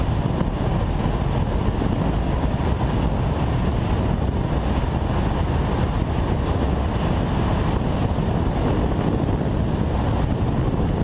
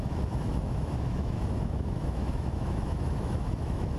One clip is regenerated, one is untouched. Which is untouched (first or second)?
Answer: first